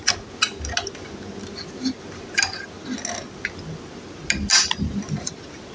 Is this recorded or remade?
recorded